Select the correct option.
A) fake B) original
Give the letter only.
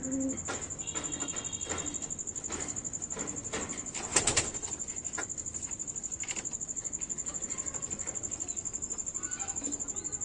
B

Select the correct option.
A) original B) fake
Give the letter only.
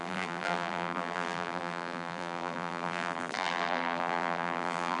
B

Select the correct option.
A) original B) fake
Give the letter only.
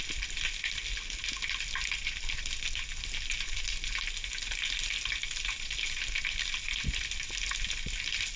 A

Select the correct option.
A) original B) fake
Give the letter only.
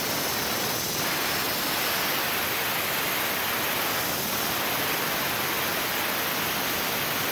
A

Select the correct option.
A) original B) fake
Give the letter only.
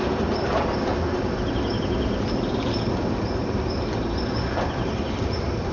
B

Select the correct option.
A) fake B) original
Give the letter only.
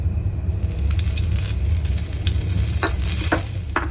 A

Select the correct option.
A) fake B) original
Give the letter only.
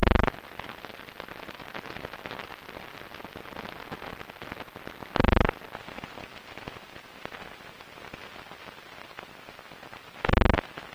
B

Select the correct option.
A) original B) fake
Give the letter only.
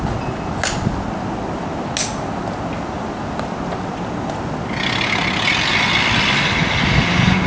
A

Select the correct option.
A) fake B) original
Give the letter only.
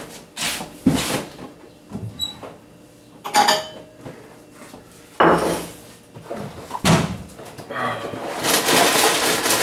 B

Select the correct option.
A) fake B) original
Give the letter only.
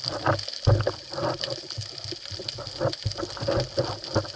B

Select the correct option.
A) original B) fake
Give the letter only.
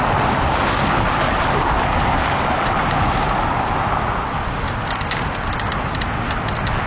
A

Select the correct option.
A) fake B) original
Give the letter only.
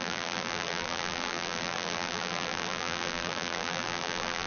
A